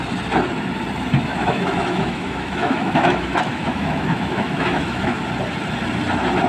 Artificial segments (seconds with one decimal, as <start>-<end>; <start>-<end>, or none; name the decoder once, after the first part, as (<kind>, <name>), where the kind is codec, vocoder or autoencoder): 1.3-5.2 (autoencoder, DAC-VAE)